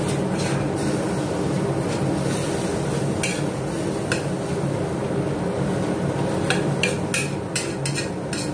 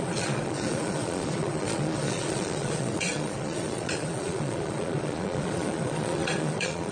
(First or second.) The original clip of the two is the first